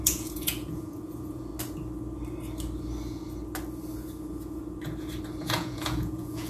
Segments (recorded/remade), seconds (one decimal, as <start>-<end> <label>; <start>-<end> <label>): 0.0-1.5 remade; 1.5-5.4 recorded; 5.4-6.5 remade